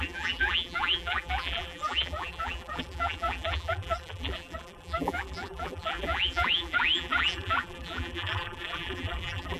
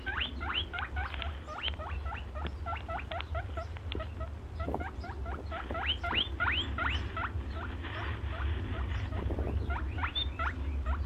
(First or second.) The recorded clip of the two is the second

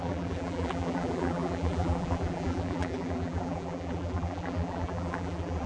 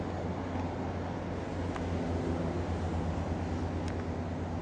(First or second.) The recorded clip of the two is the second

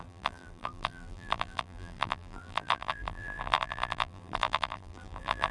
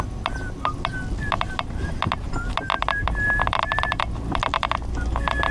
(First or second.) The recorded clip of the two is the second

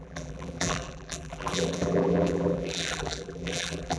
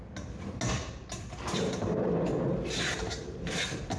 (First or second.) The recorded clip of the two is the second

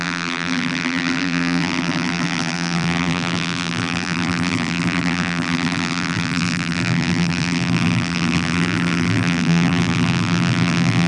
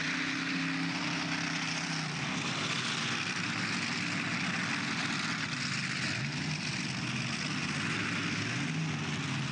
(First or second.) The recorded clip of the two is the second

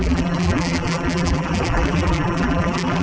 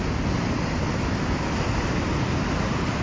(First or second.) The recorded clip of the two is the second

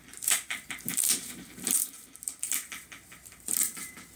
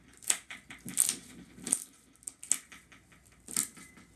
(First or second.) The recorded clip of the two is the second